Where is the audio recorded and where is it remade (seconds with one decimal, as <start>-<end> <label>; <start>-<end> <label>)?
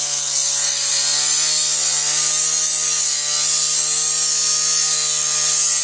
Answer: 0.0-5.8 recorded